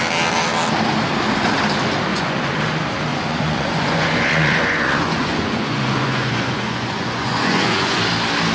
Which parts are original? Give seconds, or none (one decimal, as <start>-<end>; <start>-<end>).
0.0-2.1; 2.6-3.1; 8.0-8.5